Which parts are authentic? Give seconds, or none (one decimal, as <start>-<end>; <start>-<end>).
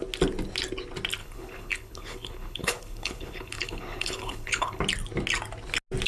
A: 0.0-1.2; 4.8-6.1